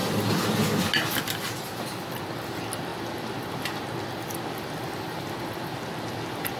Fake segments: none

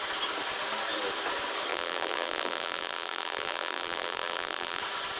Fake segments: 1.7-4.8 (vocoder, BigVGAN v2)

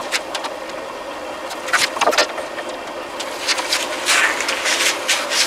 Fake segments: 0.0-0.7 (vocoder, BigVGAN v2)

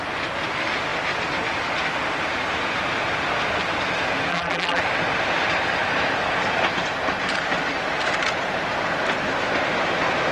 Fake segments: 4.3-4.8 (vocoder, BigVGAN v2)

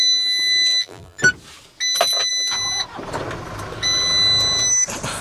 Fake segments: 0.7-1.2 (vocoder, BigVGAN v2)

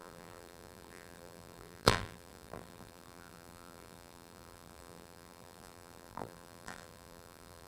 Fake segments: 0.0-7.7 (vocoder, BigVGAN v2)

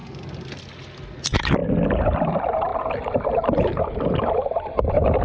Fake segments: 1.2-1.6 (vocoder, BigVGAN v2); 2.2-2.7; 3.3-5.2

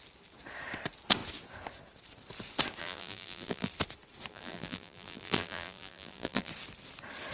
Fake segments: 2.8-3.7 (vocoder, BigVGAN v2); 4.3-6.5